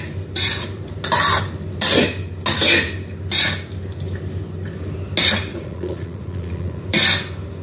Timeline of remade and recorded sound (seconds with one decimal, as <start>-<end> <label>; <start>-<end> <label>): 0.0-5.5 recorded; 5.5-6.8 remade; 6.8-7.6 recorded